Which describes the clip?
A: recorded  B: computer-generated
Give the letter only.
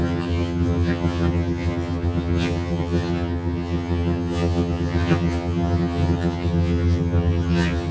B